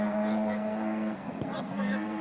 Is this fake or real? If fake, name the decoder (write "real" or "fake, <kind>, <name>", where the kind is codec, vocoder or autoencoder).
fake, codec, SNAC